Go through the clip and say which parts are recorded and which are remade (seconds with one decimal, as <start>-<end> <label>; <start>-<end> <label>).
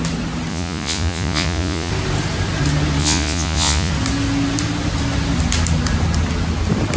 0.0-0.5 recorded; 0.5-1.9 remade; 1.9-3.0 recorded; 3.0-3.9 remade; 3.9-7.0 recorded